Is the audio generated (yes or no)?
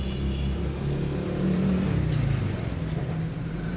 no